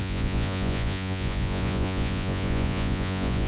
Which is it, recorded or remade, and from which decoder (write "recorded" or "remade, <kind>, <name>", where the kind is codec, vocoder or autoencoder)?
remade, vocoder, Vocos